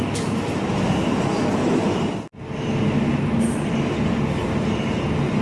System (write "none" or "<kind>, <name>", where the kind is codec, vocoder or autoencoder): none